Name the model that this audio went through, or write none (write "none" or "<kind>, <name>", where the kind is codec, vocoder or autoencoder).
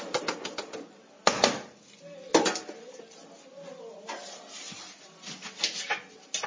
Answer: none